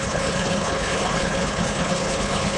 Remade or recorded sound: remade